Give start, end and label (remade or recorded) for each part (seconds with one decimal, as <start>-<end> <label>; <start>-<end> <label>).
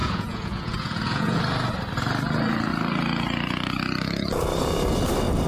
0.0-1.4 remade; 1.4-5.5 recorded